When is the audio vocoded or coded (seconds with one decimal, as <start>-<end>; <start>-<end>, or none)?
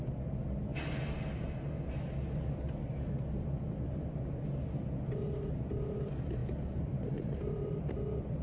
6.4-7.9